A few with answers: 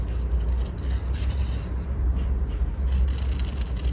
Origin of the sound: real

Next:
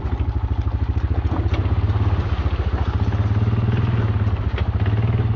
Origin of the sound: real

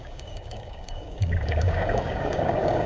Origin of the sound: fake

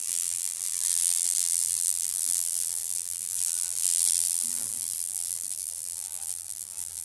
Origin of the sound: fake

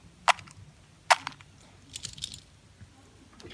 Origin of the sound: real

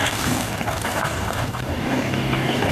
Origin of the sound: fake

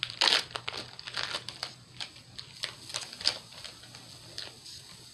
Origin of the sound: real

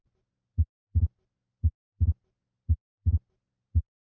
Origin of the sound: real